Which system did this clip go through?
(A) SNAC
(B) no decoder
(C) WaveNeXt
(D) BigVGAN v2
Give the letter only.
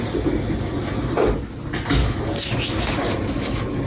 B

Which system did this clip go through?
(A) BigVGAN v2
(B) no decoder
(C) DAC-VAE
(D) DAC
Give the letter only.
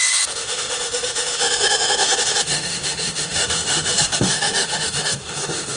C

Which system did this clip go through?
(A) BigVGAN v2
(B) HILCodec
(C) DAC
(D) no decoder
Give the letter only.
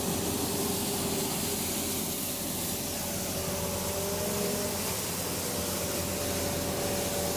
D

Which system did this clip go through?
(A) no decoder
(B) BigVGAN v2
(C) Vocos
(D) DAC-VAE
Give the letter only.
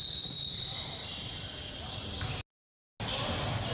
A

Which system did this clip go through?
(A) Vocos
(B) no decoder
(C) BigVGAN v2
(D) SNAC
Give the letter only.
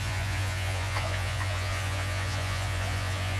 A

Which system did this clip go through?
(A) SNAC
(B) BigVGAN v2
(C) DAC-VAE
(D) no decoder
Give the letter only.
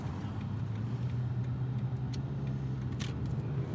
D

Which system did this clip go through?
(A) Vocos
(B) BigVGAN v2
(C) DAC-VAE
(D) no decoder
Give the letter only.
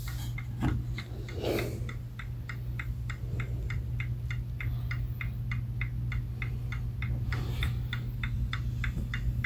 D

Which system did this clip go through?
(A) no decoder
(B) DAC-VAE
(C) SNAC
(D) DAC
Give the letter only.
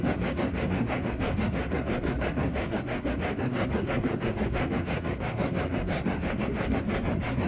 C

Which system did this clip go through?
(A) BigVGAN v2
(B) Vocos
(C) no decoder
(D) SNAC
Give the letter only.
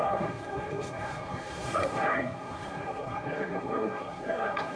D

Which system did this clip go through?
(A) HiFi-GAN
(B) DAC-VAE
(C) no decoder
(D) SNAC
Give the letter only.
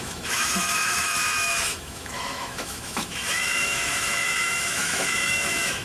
B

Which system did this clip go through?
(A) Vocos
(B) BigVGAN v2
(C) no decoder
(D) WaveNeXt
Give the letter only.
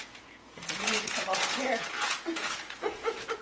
A